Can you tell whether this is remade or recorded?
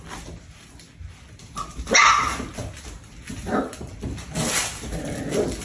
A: recorded